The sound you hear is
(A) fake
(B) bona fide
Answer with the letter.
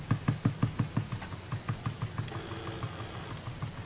B